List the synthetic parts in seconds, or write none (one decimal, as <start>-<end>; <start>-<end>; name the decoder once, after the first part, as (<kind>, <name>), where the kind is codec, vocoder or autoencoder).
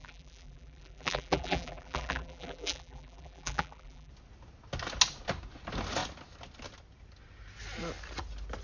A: 0.0-4.1 (vocoder, BigVGAN v2)